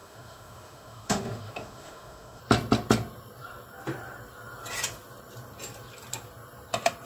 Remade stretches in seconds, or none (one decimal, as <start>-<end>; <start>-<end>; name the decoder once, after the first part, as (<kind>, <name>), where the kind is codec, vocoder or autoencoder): 0.0-2.4 (autoencoder, DAC-VAE)